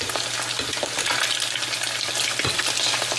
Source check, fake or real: real